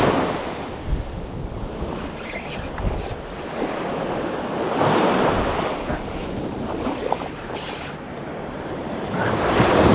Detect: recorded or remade recorded